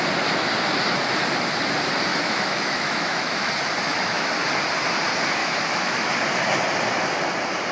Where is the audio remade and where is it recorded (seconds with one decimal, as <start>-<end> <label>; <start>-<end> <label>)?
0.0-2.1 recorded; 2.1-3.5 remade; 3.5-3.9 recorded; 3.9-4.4 remade; 4.4-5.4 recorded; 5.4-6.1 remade; 6.1-7.7 recorded

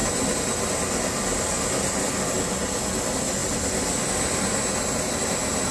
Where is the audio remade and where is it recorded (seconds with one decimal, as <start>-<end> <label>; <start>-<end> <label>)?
0.0-5.7 recorded

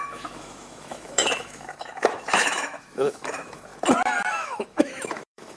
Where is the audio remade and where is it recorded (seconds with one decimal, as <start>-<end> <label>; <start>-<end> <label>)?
0.0-3.7 remade; 3.7-4.3 recorded; 4.3-5.6 remade

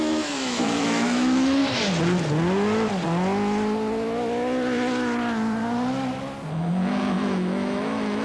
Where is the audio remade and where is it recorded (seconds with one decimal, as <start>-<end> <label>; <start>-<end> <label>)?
0.0-1.6 remade; 1.6-6.5 recorded; 6.5-8.2 remade